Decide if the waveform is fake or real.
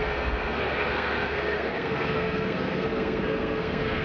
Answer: fake